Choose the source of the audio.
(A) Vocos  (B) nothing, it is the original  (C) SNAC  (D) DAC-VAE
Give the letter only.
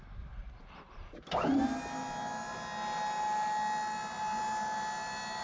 B